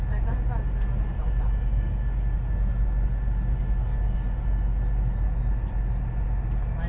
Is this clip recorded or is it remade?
recorded